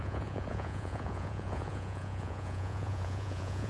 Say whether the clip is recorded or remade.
remade